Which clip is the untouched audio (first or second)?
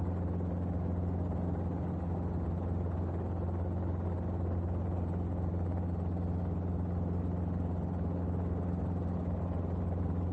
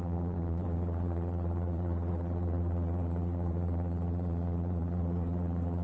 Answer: first